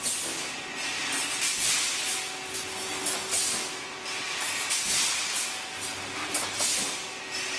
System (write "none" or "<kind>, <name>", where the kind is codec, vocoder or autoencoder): none